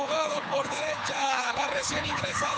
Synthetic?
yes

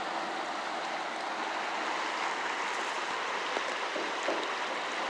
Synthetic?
no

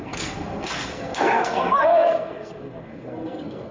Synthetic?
yes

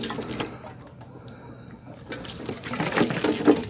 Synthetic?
no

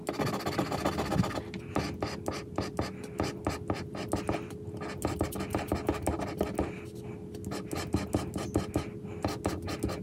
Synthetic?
no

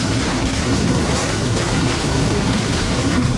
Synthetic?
yes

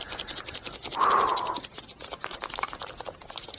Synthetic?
no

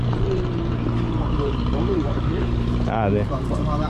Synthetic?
yes